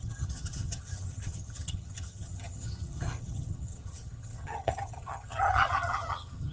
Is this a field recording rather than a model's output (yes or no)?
no